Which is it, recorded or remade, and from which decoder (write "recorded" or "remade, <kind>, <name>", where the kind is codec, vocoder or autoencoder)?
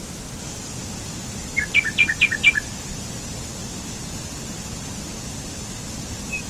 recorded